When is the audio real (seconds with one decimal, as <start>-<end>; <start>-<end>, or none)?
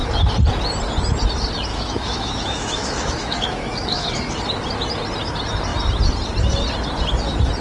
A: 0.0-1.7; 4.1-7.6